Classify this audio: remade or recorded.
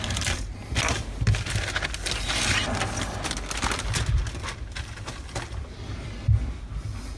recorded